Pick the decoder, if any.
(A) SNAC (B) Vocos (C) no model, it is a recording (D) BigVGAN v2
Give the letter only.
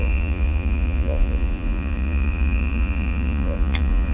B